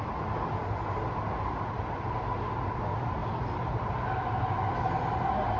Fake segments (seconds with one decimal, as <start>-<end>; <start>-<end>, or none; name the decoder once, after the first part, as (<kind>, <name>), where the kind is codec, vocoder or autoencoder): none